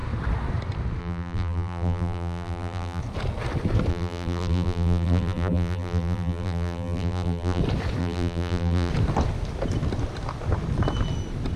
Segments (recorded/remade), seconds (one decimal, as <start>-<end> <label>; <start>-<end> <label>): 0.0-1.0 recorded; 1.0-3.0 remade; 3.0-3.9 recorded; 3.9-7.6 remade; 7.6-8.0 recorded; 8.0-8.9 remade; 8.9-11.6 recorded